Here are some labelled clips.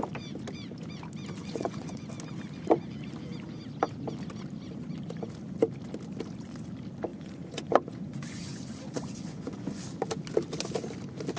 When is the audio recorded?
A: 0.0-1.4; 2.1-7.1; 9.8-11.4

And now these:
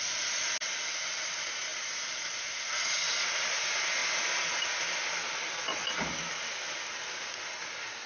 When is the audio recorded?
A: 0.0-8.1

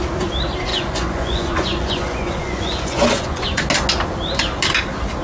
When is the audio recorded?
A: 0.0-0.7; 3.6-5.2

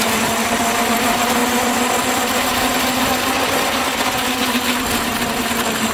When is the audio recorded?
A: 0.0-5.9

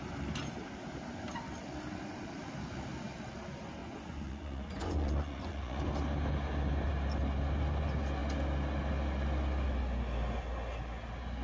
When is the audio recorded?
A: 0.0-3.8; 5.8-11.4